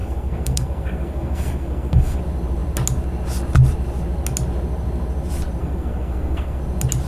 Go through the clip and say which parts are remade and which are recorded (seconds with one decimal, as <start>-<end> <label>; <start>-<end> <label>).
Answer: 0.0-2.2 remade; 2.2-5.6 recorded; 5.6-6.6 remade; 6.6-7.1 recorded